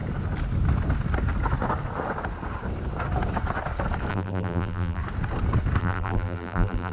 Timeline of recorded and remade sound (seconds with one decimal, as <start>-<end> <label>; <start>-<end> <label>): 0.0-4.1 recorded; 4.1-5.0 remade; 5.0-5.8 recorded; 5.8-6.9 remade